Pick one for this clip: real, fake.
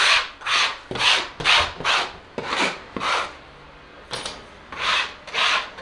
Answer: real